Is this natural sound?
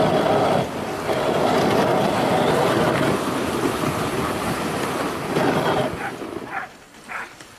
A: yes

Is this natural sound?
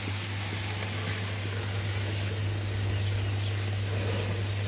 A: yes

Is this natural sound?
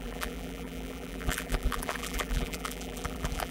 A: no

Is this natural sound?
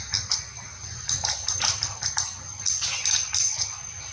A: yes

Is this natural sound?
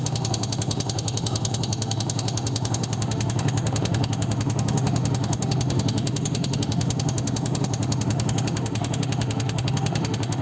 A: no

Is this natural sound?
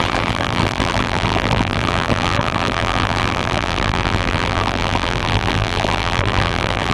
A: no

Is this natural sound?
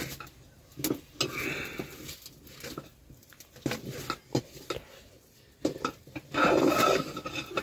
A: yes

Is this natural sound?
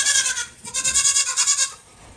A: no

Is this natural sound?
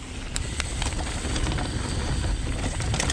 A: yes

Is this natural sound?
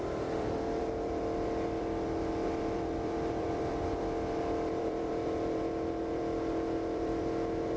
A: no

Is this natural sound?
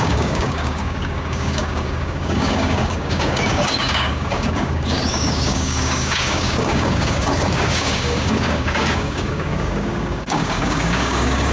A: no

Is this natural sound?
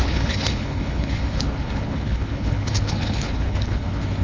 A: no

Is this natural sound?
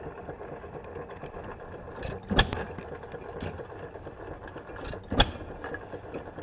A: yes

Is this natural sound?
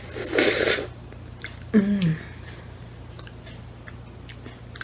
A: yes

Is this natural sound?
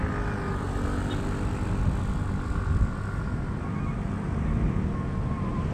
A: yes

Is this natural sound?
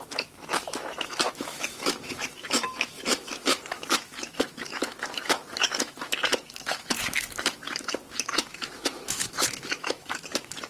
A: no